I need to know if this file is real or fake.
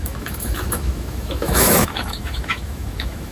fake